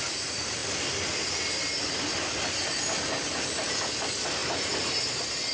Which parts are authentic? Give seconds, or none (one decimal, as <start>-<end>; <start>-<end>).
0.0-5.5